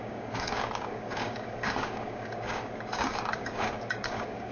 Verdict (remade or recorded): remade